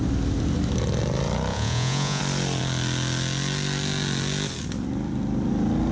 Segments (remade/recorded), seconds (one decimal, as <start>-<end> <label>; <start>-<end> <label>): 0.0-1.5 recorded; 1.5-2.2 remade; 2.2-5.9 recorded